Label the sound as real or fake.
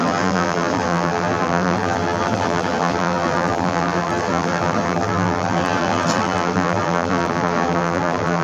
fake